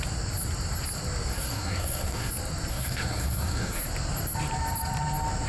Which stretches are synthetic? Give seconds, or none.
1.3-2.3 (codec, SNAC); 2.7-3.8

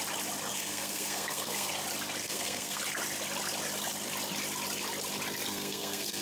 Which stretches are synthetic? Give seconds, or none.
0.5-1.7 (codec, SNAC); 2.2-2.8; 5.5-6.2

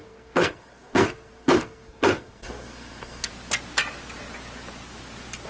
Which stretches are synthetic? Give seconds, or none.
0.0-3.3 (codec, SNAC)

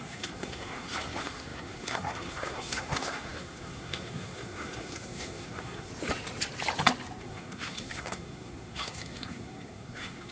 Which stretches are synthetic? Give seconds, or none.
0.0-5.9 (codec, SNAC); 7.2-10.3

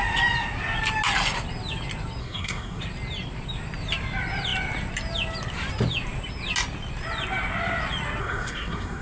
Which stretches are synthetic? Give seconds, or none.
2.2-2.8 (codec, SNAC); 8.2-9.0

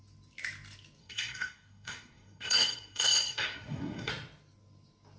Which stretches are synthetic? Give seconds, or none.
1.0-4.1 (codec, SNAC)

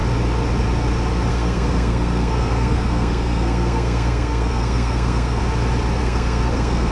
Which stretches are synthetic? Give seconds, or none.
1.3-5.4 (codec, SNAC); 6.0-6.9

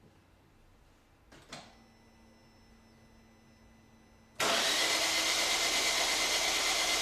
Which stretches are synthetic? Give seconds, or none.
none